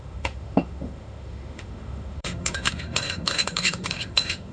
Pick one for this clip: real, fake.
fake